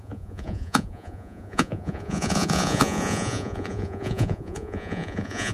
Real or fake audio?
fake